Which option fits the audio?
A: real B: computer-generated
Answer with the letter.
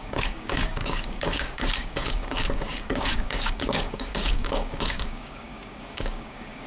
B